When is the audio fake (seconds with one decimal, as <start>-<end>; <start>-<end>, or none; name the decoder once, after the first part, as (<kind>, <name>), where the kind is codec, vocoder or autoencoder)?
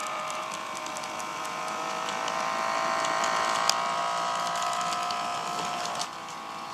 0.0-0.9 (vocoder, BigVGAN v2); 1.3-4.0